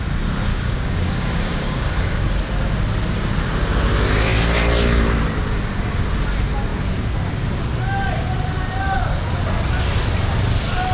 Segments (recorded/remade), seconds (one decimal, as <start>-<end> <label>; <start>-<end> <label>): 0.0-0.5 recorded; 0.5-2.3 remade; 2.3-10.9 recorded